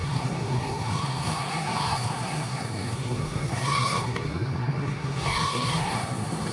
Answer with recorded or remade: remade